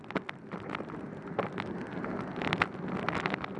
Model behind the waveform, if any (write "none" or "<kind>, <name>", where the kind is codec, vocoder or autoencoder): none